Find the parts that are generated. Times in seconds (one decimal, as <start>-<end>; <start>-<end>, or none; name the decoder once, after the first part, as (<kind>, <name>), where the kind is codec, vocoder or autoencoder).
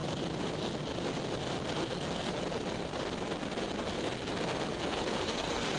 1.8-2.4 (codec, SNAC); 4.7-5.8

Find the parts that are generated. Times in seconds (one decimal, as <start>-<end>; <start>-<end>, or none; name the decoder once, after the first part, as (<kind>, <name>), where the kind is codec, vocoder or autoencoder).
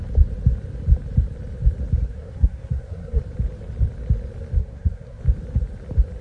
2.0-3.2 (codec, SNAC); 4.6-5.2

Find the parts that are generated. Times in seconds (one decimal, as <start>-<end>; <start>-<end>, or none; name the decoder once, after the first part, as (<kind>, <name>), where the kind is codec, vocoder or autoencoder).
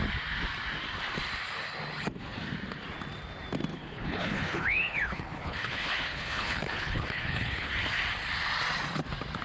3.7-7.7 (codec, HILCodec)